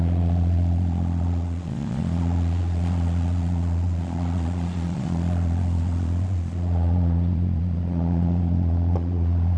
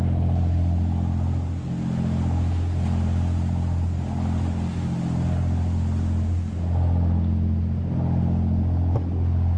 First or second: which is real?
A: second